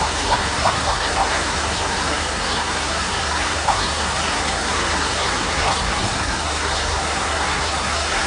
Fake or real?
fake